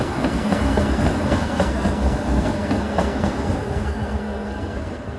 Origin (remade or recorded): remade